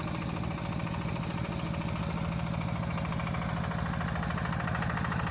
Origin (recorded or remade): recorded